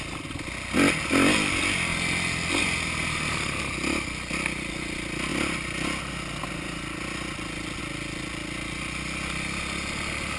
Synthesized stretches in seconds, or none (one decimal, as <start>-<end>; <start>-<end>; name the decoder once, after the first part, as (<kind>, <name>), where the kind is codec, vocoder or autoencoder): none